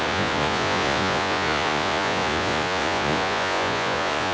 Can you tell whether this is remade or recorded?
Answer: remade